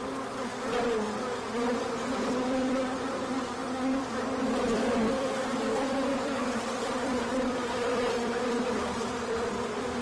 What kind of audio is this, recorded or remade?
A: remade